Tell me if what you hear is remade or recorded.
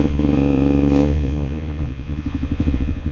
remade